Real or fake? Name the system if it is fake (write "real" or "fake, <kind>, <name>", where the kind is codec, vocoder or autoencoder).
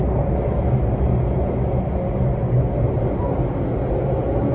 real